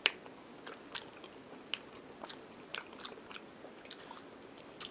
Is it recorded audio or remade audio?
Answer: recorded